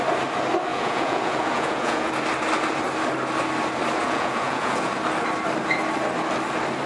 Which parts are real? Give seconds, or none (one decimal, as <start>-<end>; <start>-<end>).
0.0-0.7; 2.1-4.0; 4.9-6.9